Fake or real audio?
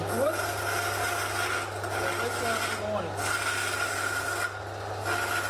real